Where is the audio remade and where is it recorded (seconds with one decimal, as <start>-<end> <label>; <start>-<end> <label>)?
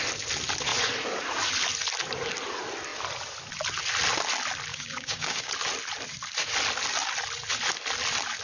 0.0-4.7 recorded; 4.7-5.5 remade; 5.5-8.4 recorded